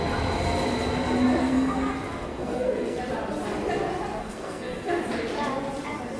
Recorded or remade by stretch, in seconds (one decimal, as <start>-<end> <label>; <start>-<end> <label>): 0.0-1.4 recorded; 1.4-1.9 remade; 1.9-2.3 recorded; 2.3-3.0 remade; 3.0-4.2 recorded; 4.2-5.0 remade; 5.0-6.2 recorded

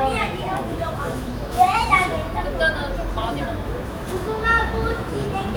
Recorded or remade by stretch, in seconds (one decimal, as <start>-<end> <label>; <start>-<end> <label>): 0.0-2.2 remade; 2.2-3.4 recorded; 3.4-5.6 remade

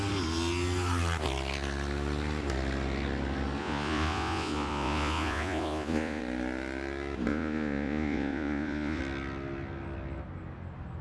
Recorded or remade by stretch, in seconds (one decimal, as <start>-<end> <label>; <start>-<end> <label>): 0.0-3.6 recorded; 3.6-6.2 remade; 6.2-7.3 recorded; 7.3-9.0 remade; 9.0-11.0 recorded

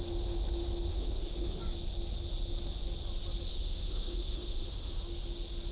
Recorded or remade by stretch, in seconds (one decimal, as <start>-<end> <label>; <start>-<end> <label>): 0.0-0.9 recorded; 0.9-1.6 remade; 1.6-3.5 recorded; 3.5-4.9 remade; 4.9-5.7 recorded

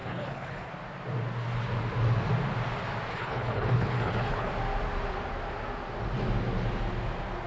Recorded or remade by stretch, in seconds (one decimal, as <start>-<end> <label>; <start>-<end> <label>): 0.0-0.7 remade; 0.7-3.1 recorded; 3.1-4.5 remade; 4.5-7.5 recorded